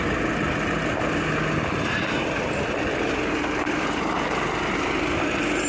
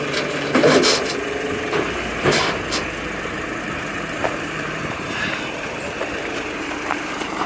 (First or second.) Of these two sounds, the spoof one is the second